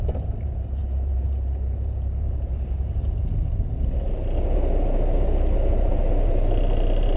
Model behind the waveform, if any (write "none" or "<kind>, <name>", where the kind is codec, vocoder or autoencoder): none